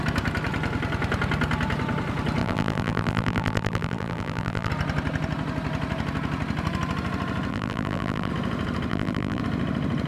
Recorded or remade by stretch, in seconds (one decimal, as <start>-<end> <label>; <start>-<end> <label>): 0.0-2.4 recorded; 2.4-4.7 remade; 4.7-7.5 recorded; 7.5-8.3 remade; 8.3-8.9 recorded; 8.9-9.4 remade; 9.4-10.1 recorded